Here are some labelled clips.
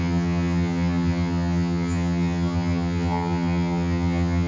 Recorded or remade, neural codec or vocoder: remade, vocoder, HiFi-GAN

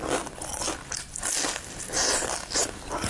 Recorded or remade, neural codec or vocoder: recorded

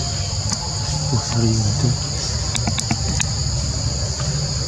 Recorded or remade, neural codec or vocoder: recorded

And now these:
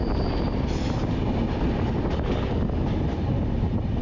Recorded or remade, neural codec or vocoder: recorded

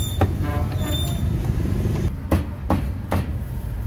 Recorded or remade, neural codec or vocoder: recorded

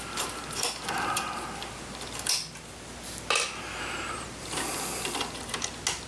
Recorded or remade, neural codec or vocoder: recorded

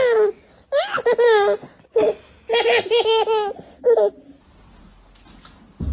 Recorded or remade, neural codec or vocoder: recorded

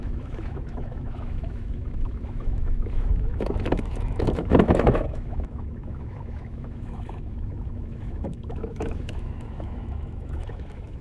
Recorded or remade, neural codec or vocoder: remade, autoencoder, DAC-VAE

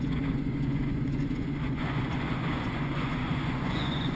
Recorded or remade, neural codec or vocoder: remade, vocoder, Vocos